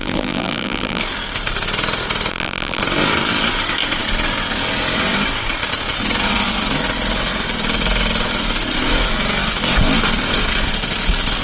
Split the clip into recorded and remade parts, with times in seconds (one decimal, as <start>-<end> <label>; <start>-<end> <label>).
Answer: 0.0-1.0 remade; 1.0-2.3 recorded; 2.3-2.8 remade; 2.8-11.4 recorded